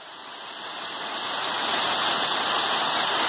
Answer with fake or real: real